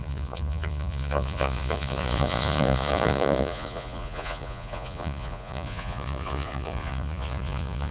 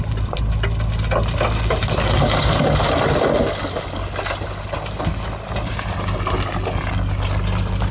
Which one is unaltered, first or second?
second